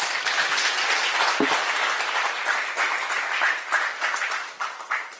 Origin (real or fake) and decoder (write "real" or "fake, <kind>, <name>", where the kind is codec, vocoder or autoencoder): real